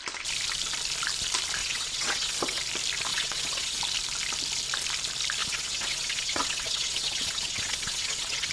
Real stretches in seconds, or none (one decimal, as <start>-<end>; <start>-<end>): 0.0-1.6; 2.6-3.1; 3.8-5.4